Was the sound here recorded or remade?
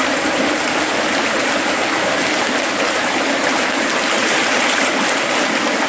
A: recorded